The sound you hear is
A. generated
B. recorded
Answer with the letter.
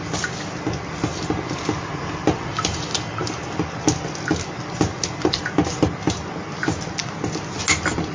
B